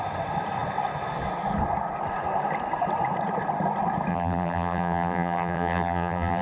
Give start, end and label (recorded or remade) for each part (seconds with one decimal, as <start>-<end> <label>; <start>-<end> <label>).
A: 0.0-4.1 recorded; 4.1-6.4 remade